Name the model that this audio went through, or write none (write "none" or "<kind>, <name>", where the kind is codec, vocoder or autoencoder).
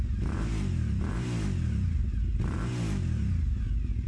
none